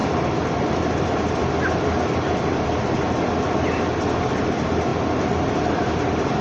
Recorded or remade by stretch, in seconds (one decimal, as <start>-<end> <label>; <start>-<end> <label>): 0.0-6.4 recorded